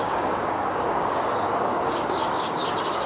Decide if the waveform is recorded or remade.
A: remade